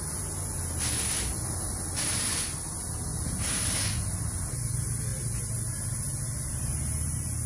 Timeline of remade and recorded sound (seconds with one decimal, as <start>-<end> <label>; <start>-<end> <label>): 0.0-7.5 recorded